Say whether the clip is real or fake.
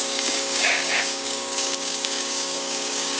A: fake